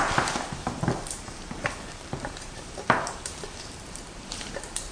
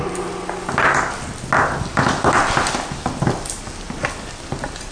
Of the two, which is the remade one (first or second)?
first